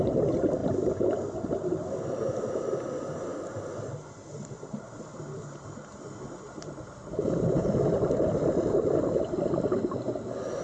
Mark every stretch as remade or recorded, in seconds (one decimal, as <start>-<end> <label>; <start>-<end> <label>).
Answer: 0.0-3.3 recorded; 3.3-8.5 remade; 8.5-10.6 recorded